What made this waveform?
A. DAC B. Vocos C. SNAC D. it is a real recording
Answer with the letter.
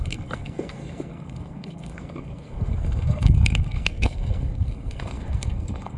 C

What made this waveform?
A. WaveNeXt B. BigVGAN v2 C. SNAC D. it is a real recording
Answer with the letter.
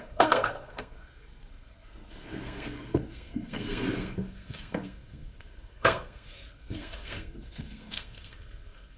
C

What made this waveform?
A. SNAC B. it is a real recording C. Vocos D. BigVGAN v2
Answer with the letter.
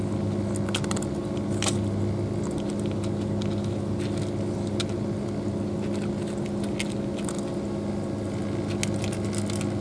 B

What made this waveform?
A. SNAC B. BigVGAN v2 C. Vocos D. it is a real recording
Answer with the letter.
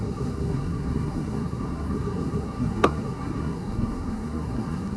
A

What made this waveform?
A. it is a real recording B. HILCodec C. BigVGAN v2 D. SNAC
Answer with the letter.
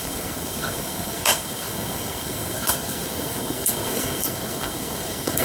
D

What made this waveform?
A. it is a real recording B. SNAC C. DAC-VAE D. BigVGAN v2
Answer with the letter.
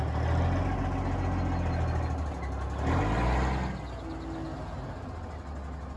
A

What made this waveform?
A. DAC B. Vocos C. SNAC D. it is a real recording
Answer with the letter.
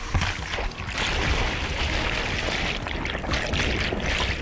D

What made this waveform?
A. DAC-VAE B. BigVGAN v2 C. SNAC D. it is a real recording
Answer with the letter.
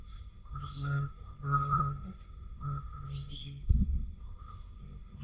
C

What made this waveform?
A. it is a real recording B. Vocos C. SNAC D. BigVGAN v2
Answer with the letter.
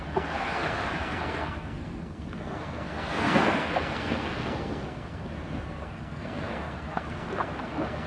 C